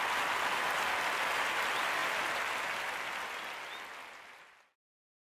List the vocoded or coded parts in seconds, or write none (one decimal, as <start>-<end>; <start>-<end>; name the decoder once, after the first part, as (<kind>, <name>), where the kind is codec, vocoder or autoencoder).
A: none